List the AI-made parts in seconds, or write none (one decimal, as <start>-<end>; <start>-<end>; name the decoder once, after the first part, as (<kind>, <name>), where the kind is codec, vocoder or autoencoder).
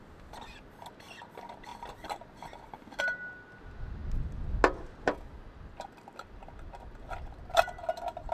none